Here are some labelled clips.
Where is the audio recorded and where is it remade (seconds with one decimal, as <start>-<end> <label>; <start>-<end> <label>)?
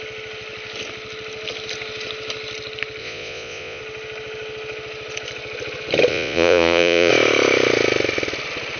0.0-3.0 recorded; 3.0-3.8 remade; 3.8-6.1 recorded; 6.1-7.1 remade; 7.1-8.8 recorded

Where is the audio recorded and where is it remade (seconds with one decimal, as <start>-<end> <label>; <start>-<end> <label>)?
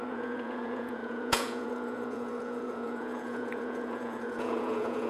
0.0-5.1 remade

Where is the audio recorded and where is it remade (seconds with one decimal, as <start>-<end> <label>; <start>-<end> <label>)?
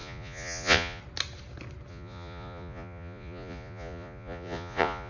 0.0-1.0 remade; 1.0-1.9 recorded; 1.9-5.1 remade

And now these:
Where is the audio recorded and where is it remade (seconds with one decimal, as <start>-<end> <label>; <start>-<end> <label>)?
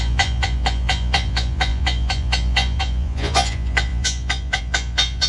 0.0-5.3 remade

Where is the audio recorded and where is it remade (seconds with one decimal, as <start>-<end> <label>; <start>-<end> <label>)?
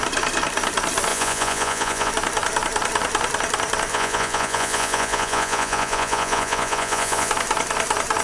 0.0-1.1 recorded; 1.1-2.1 remade; 2.1-3.9 recorded; 3.9-7.3 remade; 7.3-8.2 recorded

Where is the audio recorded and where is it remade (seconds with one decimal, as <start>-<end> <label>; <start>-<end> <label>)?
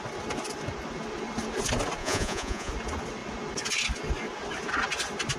0.0-2.0 recorded; 2.0-2.7 remade; 2.7-5.4 recorded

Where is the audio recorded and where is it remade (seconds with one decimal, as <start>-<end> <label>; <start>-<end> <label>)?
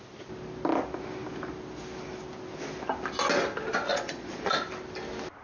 0.0-3.9 recorded; 3.9-4.6 remade; 4.6-5.4 recorded